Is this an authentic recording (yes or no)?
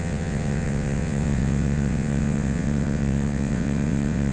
no